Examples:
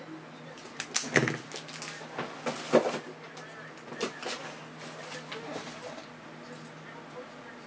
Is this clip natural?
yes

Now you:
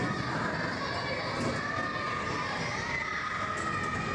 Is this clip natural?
yes